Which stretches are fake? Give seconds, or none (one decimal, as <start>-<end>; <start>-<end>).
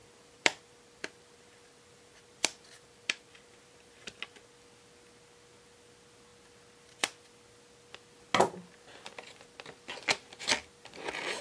0.0-4.2